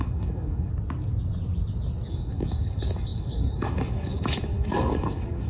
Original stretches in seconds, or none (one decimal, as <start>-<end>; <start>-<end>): 0.7-2.1